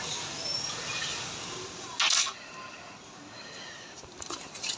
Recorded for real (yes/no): yes